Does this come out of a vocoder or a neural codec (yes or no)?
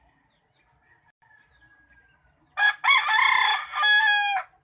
no